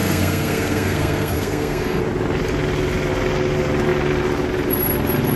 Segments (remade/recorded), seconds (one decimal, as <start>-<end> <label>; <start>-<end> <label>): 0.0-2.0 remade; 2.0-5.4 recorded